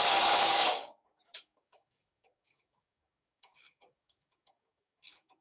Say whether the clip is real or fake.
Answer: fake